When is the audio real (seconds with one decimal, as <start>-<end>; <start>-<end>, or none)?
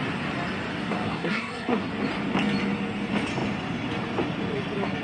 0.0-0.7; 1.9-5.0